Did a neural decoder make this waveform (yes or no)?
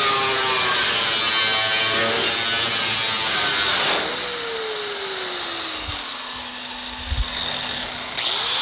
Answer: no